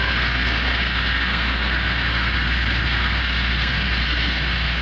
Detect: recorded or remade remade